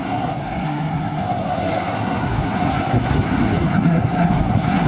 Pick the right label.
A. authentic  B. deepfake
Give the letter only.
B